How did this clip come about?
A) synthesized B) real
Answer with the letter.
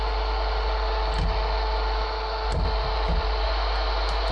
B